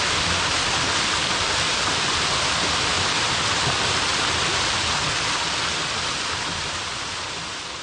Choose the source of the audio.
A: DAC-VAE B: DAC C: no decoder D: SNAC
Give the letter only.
C